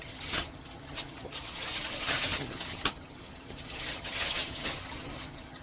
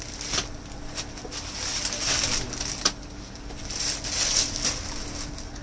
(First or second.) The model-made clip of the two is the first